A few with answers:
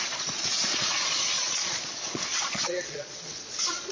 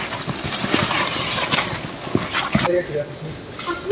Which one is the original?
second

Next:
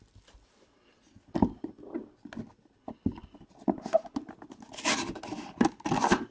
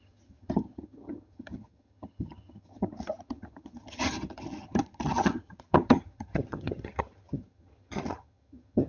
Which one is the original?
first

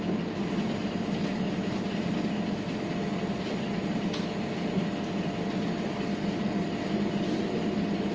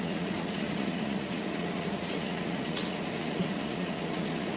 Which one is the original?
first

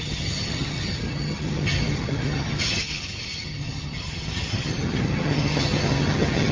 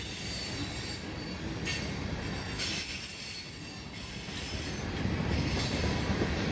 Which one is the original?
second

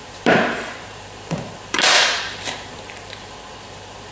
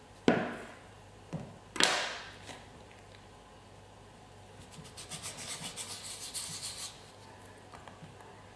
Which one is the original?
second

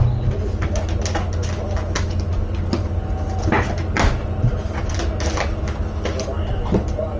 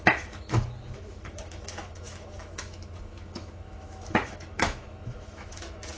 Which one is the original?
first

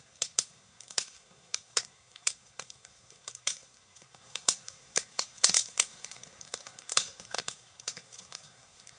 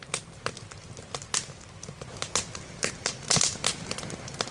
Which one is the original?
second